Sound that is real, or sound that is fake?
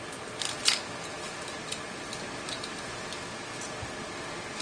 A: real